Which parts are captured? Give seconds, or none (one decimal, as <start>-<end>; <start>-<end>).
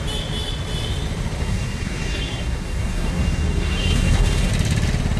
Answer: 0.0-1.4; 4.5-5.2